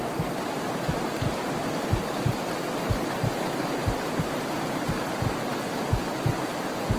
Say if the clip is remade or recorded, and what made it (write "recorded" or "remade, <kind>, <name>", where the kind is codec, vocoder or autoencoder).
recorded